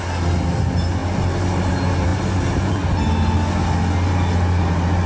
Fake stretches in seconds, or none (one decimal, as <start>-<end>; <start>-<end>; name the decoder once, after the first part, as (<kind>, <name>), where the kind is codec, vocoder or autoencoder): none